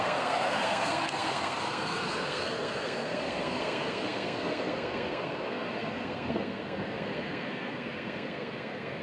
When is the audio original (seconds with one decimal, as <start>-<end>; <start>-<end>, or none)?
none